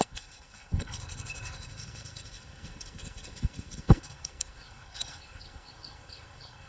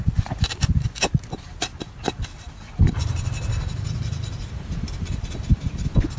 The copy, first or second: first